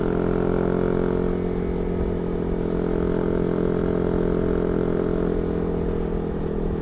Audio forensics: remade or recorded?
recorded